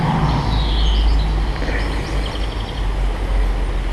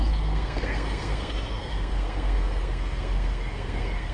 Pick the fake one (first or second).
second